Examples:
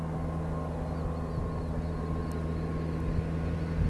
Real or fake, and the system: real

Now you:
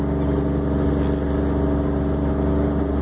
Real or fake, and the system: real